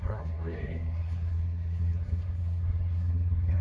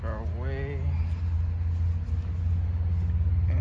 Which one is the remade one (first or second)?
first